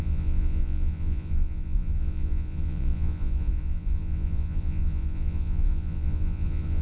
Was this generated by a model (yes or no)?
yes